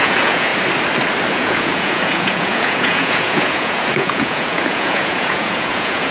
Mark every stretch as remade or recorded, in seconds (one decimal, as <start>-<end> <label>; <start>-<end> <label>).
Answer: 0.0-0.5 remade; 0.5-1.3 recorded; 1.3-6.1 remade